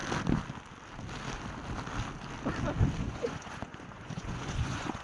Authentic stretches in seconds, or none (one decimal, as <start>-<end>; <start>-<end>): 0.0-3.0